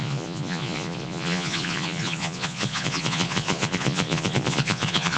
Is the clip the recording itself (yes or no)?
no